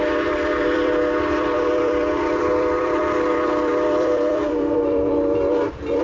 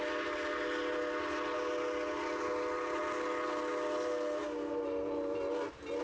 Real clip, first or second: second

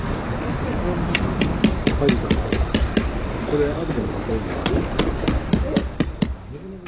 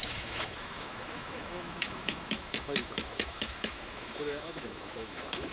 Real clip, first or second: first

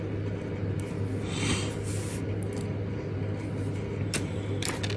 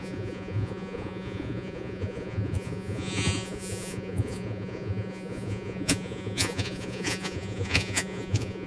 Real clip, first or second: first